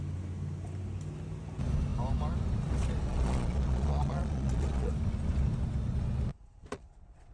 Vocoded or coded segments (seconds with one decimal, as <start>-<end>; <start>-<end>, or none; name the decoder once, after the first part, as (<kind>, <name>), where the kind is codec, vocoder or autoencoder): 3.1-4.9 (vocoder, Vocos); 6.3-7.3